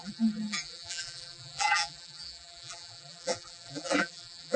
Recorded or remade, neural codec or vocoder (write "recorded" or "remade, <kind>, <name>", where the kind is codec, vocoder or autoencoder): remade, vocoder, BigVGAN v2